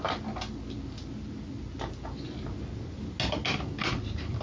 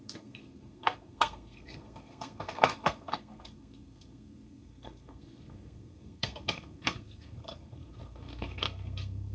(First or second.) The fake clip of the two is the second